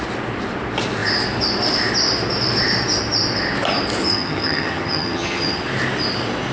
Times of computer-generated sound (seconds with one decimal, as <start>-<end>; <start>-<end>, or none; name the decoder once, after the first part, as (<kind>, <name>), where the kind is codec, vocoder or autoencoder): 4.0-5.6 (vocoder, HiFi-GAN)